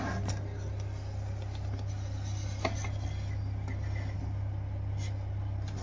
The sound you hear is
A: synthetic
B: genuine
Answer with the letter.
B